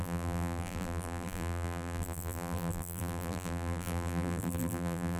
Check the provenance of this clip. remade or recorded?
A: remade